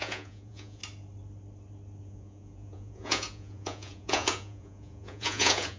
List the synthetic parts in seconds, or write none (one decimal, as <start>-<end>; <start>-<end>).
0.0-0.8; 2.0-5.8